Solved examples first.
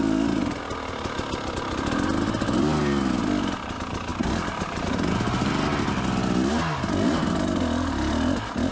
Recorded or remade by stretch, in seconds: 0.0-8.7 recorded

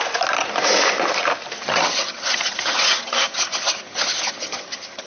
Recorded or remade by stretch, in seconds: 0.0-1.6 recorded; 1.6-5.1 remade